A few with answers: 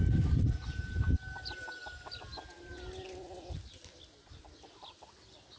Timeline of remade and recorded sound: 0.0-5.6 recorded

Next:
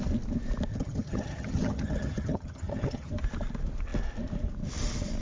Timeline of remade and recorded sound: 0.0-0.7 recorded; 0.7-3.1 remade; 3.1-5.2 recorded

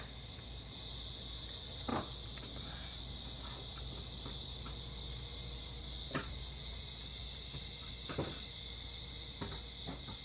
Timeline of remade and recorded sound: 0.0-10.2 recorded

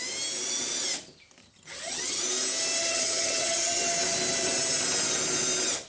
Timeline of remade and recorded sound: 0.0-1.4 recorded; 1.4-2.2 remade; 2.2-2.8 recorded; 2.8-3.8 remade; 3.8-5.9 recorded